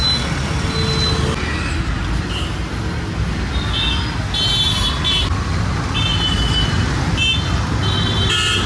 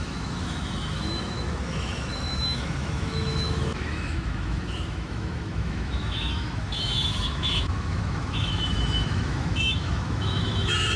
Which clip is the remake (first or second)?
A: second